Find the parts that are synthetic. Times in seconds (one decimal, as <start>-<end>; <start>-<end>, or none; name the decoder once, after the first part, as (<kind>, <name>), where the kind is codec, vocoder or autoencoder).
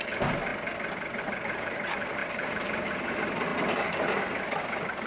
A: 0.0-0.5 (vocoder, BigVGAN v2); 1.2-3.5